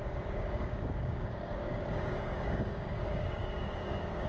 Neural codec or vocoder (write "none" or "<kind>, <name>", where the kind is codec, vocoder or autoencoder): codec, DAC